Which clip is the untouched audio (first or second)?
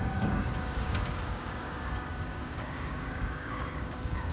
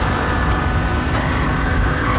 second